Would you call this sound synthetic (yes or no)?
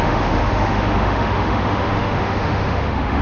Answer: yes